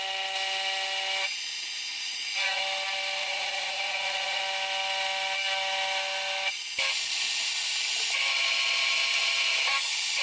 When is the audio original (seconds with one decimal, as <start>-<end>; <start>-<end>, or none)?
0.0-1.9; 2.6-3.2; 4.4-10.2